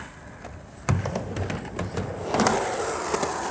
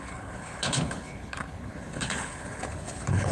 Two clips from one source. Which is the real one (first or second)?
first